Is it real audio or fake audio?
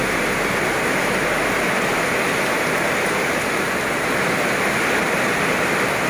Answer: real